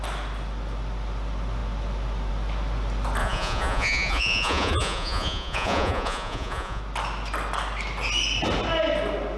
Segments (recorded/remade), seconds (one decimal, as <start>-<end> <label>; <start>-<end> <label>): 0.0-3.2 recorded; 3.2-6.8 remade; 6.8-9.4 recorded